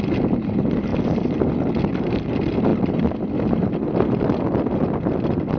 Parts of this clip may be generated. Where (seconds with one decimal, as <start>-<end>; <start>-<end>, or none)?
none